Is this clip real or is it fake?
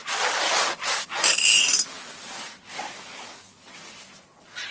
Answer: real